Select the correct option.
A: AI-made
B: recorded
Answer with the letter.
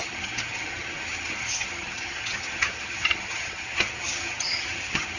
A